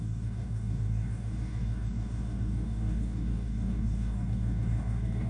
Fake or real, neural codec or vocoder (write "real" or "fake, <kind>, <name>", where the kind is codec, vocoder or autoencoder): fake, codec, DAC